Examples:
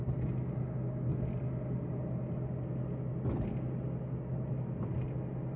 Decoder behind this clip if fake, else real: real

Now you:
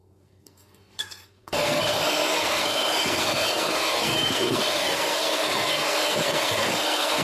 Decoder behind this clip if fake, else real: fake, codec, SNAC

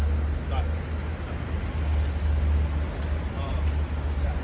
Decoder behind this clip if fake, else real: real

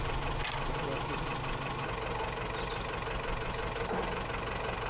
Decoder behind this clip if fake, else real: real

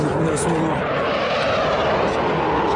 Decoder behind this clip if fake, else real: real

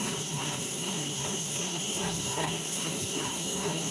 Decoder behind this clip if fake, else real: fake, codec, SNAC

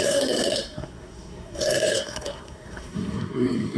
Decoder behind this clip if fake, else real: fake, codec, SNAC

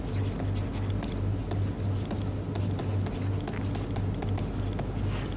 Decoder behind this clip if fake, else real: real